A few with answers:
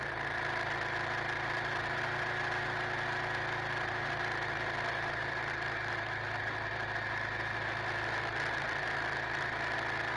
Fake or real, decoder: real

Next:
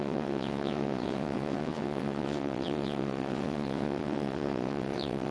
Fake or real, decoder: fake, vocoder, WaveNeXt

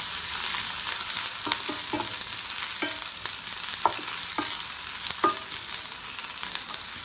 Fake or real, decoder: real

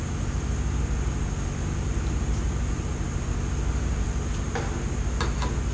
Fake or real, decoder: real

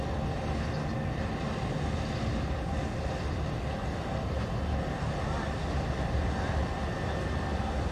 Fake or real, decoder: real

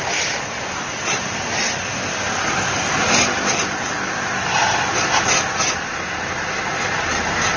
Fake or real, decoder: real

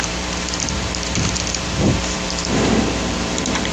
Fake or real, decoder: fake, vocoder, BigVGAN v2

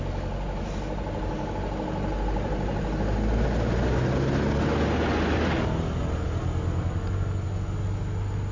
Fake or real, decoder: real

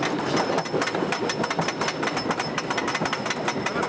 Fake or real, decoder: real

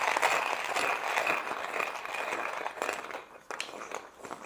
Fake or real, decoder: real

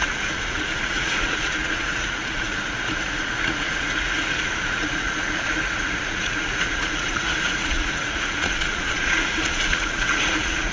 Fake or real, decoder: fake, vocoder, Vocos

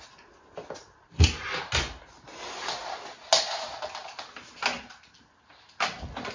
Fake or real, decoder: real